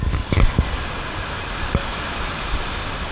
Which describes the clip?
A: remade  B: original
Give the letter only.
B